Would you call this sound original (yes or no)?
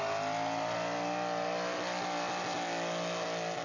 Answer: yes